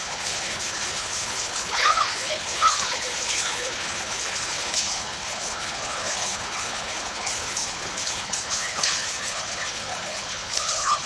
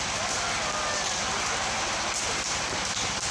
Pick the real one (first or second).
second